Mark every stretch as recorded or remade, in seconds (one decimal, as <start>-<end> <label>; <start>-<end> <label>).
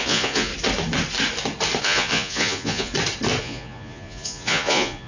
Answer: 0.0-0.5 remade; 0.5-1.8 recorded; 1.8-2.9 remade; 2.9-3.4 recorded; 3.4-5.1 remade